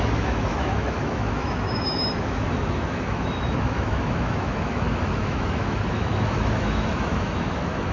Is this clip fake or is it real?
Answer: fake